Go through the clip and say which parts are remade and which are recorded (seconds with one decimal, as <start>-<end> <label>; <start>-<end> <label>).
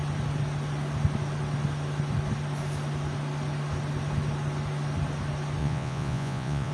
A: 0.0-5.6 recorded; 5.6-6.7 remade